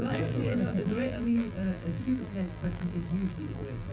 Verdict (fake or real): fake